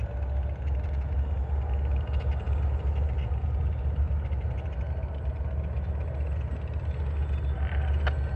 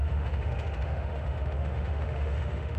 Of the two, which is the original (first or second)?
first